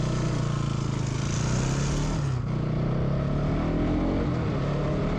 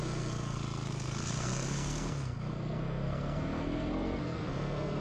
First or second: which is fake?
second